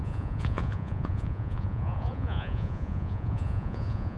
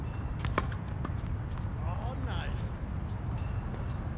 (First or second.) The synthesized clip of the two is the first